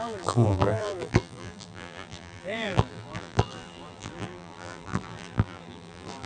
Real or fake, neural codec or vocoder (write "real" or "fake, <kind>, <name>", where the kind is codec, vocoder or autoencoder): fake, vocoder, BigVGAN v2